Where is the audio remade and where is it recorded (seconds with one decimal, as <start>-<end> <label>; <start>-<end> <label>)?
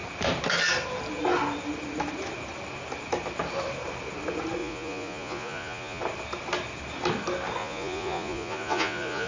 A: 0.0-4.6 recorded; 4.6-6.0 remade; 6.0-7.6 recorded; 7.6-9.3 remade